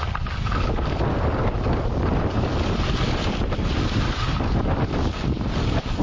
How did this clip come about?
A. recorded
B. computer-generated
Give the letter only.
A